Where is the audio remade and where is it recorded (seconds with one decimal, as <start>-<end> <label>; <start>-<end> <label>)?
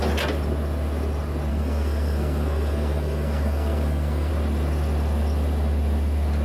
0.0-1.5 recorded; 1.5-4.3 remade; 4.3-6.4 recorded